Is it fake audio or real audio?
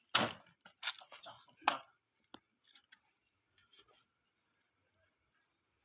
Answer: real